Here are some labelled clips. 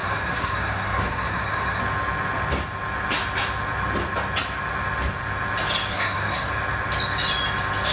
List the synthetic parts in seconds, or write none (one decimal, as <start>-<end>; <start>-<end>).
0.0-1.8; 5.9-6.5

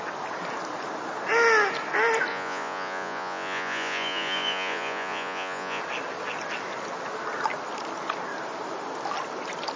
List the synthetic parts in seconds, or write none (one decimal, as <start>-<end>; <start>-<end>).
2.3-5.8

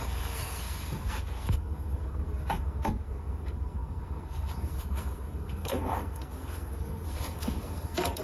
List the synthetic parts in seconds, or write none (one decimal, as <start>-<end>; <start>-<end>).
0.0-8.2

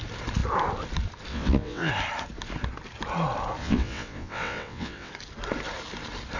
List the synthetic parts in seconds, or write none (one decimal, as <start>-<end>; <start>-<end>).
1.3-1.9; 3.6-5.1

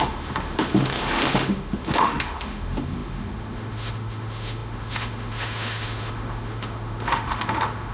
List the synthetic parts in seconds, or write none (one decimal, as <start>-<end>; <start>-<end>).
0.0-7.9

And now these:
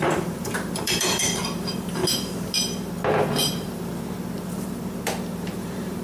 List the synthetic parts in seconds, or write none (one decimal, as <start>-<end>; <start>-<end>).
0.0-2.0; 5.6-6.0

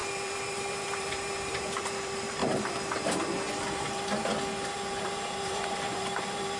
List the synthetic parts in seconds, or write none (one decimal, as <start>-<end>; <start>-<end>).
0.0-2.4; 3.5-4.3; 5.0-6.6

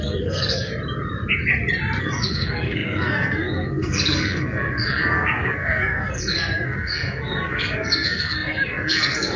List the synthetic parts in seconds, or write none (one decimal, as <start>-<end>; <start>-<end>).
0.0-0.7; 2.0-9.4